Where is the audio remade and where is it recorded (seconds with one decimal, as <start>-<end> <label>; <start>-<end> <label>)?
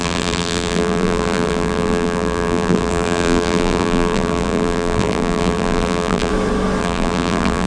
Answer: 0.0-6.3 remade; 6.3-6.8 recorded; 6.8-7.7 remade